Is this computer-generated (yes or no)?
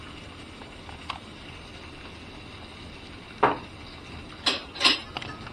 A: no